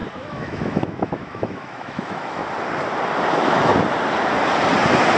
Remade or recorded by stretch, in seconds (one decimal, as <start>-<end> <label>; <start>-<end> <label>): 0.0-2.4 remade; 2.4-3.3 recorded; 3.3-3.7 remade; 3.7-5.2 recorded